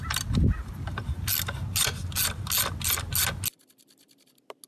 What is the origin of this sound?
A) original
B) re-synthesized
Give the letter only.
A